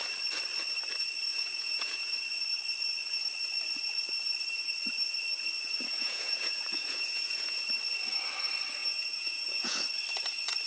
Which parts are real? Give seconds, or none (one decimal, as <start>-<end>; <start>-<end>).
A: 0.0-1.3; 2.1-5.9; 7.6-8.8; 9.8-10.7